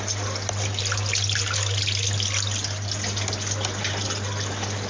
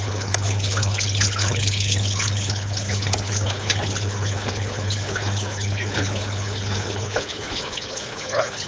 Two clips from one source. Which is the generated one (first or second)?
second